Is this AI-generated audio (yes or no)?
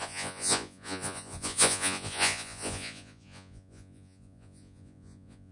yes